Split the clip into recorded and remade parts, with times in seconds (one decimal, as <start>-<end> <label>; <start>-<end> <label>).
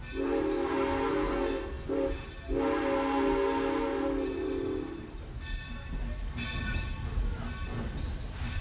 0.0-1.1 recorded; 1.1-1.9 remade; 1.9-8.6 recorded